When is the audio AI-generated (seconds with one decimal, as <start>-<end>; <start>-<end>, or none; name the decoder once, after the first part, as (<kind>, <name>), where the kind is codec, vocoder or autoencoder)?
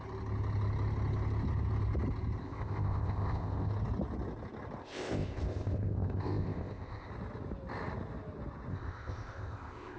2.4-3.7 (codec, ZipCodec); 4.8-7.1; 8.7-10.0